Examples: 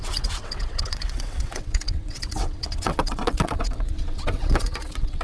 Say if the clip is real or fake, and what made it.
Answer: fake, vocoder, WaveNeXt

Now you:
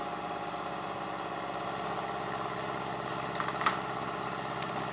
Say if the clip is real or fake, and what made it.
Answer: real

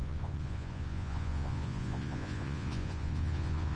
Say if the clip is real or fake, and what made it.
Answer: fake, vocoder, Vocos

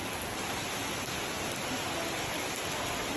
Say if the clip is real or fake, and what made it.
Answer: real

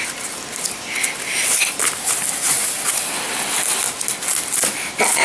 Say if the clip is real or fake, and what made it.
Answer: real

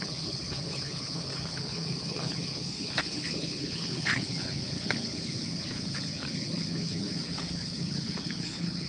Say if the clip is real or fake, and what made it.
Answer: fake, codec, HILCodec